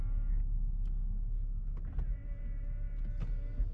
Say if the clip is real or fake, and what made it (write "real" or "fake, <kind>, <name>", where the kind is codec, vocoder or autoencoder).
real